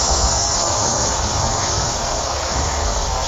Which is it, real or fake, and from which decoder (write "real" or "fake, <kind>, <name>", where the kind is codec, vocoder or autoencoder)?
fake, codec, SNAC